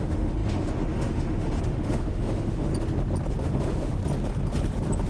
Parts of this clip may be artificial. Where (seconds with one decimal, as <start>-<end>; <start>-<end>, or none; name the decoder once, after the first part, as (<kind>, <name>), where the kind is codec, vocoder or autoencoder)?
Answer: 0.0-2.7 (autoencoder, DAC-VAE); 3.4-4.0